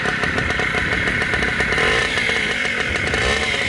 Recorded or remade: remade